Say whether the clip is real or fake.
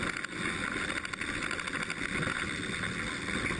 real